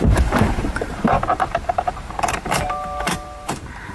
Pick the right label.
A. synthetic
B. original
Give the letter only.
A